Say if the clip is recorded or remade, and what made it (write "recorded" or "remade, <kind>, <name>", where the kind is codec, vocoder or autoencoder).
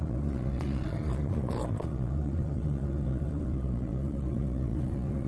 remade, vocoder, Vocos